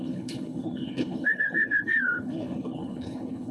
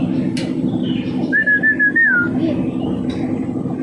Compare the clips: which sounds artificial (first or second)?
first